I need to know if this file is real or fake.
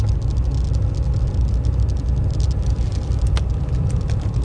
real